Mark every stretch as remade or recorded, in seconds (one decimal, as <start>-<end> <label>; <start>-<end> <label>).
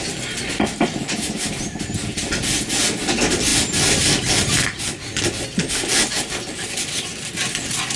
0.0-8.0 recorded